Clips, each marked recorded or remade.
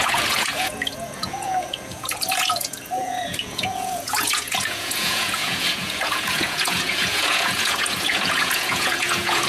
remade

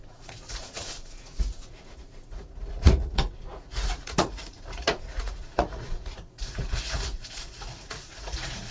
remade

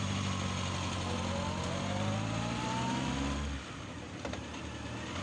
recorded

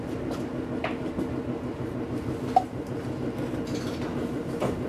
recorded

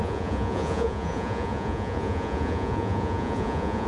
remade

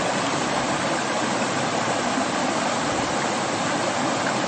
recorded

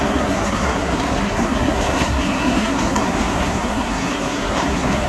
remade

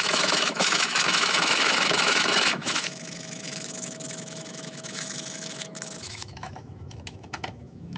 remade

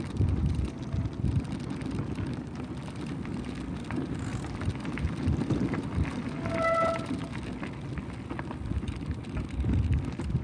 recorded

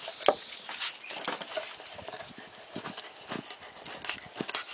recorded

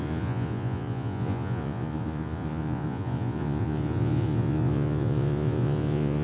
remade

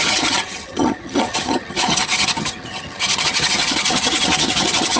remade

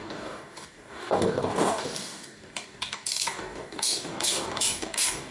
remade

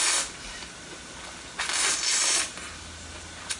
recorded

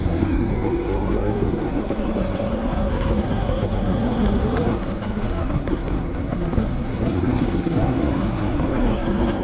remade